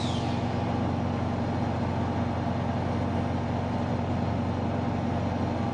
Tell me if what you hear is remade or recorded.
recorded